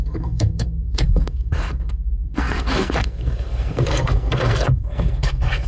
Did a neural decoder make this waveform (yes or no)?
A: yes